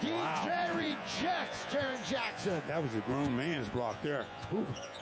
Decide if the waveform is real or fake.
fake